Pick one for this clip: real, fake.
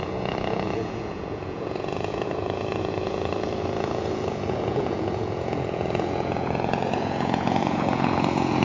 fake